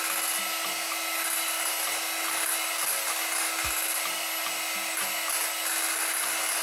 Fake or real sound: real